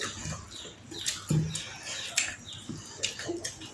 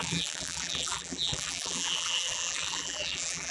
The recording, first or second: first